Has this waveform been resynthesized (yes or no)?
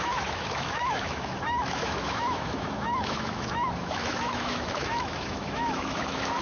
yes